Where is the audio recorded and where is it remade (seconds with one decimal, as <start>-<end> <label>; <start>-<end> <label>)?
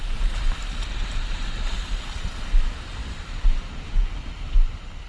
0.0-5.1 recorded